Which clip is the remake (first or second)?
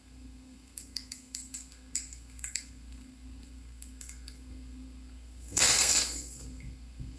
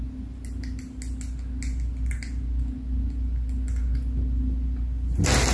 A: first